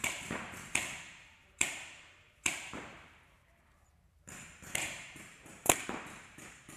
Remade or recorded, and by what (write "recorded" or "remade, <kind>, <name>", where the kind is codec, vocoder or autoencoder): remade, vocoder, BigVGAN v2